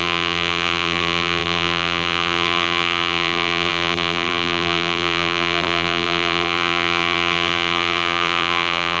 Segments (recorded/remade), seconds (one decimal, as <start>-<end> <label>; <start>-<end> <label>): 0.0-9.0 remade